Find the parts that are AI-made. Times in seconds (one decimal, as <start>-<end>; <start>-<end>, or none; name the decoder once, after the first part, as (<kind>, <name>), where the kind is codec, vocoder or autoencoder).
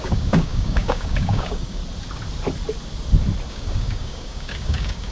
0.0-1.8 (codec, DAC); 3.5-5.1